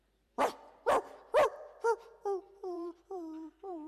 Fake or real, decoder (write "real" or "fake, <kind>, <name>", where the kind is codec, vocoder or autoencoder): fake, vocoder, BigVGAN v2